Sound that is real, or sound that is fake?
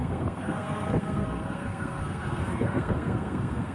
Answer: fake